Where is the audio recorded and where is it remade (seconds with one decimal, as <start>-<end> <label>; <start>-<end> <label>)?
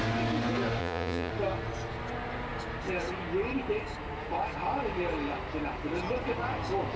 0.0-0.8 recorded; 0.8-1.3 remade; 1.3-7.0 recorded